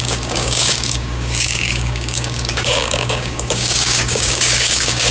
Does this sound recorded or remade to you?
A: remade